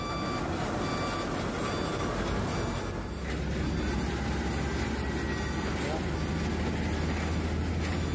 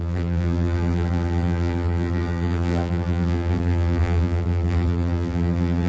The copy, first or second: second